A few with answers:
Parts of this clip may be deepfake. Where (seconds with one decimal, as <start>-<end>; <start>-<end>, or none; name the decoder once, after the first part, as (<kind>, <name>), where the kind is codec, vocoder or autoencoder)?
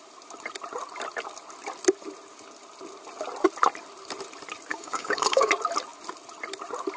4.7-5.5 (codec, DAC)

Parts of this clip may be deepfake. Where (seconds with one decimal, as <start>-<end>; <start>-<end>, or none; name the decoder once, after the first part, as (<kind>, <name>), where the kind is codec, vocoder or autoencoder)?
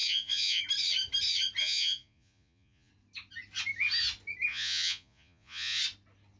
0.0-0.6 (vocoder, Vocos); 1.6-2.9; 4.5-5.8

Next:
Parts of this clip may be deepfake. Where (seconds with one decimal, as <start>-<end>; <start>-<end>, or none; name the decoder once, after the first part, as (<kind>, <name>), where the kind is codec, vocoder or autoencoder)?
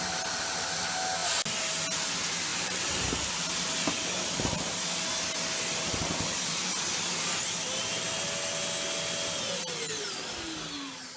2.5-3.5 (vocoder, BigVGAN v2)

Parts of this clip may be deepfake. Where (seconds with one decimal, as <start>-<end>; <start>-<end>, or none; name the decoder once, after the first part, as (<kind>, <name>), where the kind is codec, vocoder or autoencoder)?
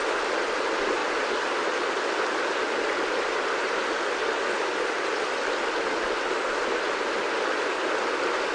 none